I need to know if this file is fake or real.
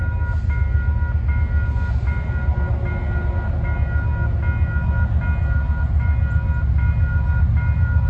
real